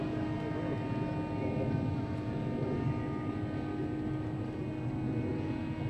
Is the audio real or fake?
real